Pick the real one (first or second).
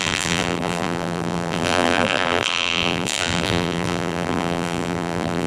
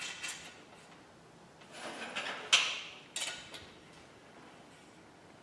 second